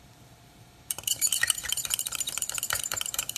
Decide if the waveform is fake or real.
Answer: fake